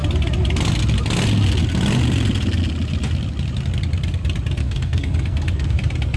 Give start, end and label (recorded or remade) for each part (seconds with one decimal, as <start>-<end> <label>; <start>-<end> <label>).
0.0-4.6 recorded; 4.6-5.7 remade; 5.7-6.2 recorded